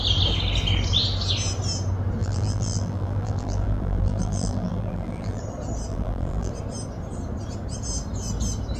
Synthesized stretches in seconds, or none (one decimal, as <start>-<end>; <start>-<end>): 2.2-5.4; 5.9-6.5